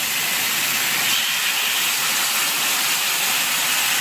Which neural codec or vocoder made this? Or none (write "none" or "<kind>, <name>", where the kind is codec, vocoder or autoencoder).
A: none